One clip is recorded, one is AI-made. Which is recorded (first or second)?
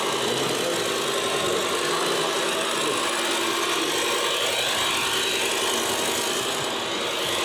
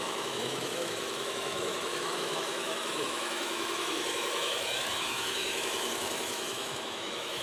first